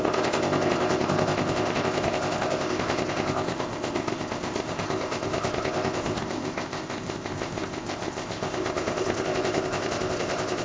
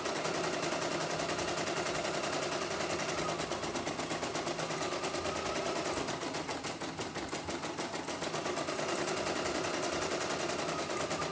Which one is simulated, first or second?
first